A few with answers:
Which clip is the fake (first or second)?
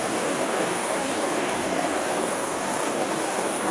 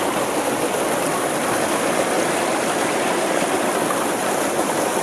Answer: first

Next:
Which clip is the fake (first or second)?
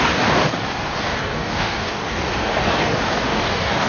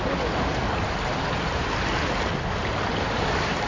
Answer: first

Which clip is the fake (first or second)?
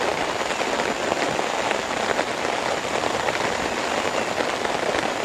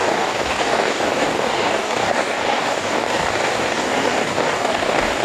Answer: second